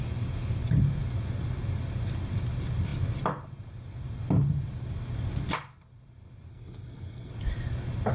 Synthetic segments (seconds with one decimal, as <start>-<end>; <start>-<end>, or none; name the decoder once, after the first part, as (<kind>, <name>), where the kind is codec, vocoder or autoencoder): 6.5-7.3 (codec, SNAC)